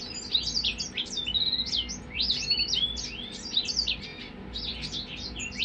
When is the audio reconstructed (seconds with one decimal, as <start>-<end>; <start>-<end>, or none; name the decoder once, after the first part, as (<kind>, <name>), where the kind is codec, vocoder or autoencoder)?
none